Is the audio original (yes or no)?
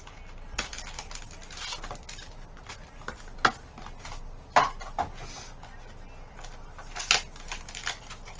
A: yes